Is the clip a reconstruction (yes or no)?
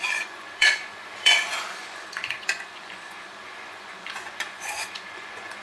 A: yes